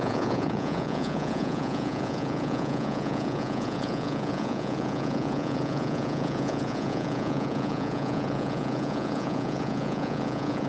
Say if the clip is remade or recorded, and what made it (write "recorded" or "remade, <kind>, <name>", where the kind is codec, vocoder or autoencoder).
remade, vocoder, Vocos